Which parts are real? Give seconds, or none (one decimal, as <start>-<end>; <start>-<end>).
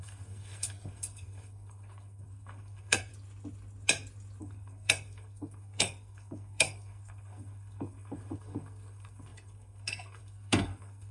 3.1-4.4